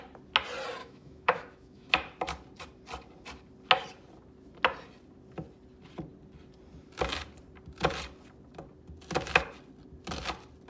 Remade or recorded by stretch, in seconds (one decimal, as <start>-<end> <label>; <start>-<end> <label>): 0.0-0.8 recorded; 0.8-1.9 remade; 1.9-10.7 recorded